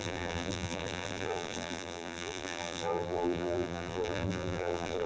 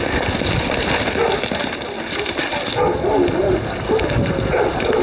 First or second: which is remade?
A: first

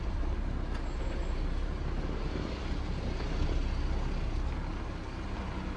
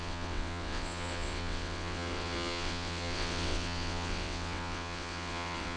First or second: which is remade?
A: second